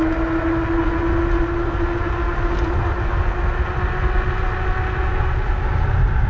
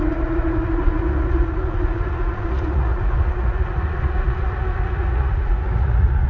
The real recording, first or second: first